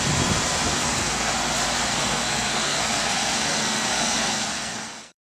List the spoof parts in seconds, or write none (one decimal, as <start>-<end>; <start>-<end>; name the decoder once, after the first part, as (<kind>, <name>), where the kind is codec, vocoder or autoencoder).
0.7-1.3 (codec, SNAC); 1.9-5.2

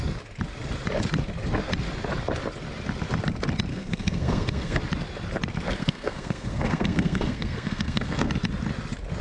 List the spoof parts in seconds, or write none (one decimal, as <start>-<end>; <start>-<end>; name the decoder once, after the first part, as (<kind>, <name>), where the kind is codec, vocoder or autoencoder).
3.7-4.8 (codec, SNAC); 5.8-8.3

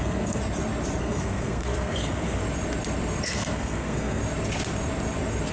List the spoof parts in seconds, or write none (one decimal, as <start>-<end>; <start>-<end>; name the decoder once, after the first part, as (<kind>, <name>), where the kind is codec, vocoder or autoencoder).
0.0-0.4 (codec, SNAC); 1.0-2.4; 3.3-4.2

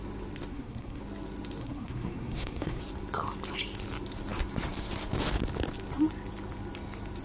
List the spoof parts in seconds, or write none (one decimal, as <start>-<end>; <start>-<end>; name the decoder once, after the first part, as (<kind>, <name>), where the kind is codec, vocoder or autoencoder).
0.5-1.0 (codec, SNAC); 1.6-2.8

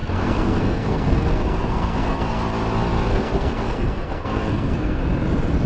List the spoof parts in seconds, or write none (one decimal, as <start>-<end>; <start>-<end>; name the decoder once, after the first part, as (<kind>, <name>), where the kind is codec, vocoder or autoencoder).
0.0-2.4 (codec, SNAC); 3.1-5.0